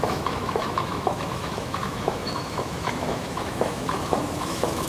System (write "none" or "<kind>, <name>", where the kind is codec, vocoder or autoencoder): autoencoder, DAC-VAE